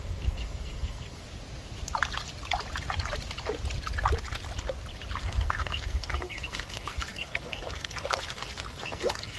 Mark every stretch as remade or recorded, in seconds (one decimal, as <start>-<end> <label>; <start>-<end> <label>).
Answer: 0.0-1.2 remade; 1.2-5.2 recorded; 5.2-9.4 remade